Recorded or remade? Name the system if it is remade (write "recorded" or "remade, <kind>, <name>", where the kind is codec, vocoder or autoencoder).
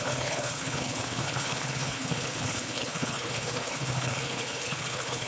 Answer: remade, codec, HILCodec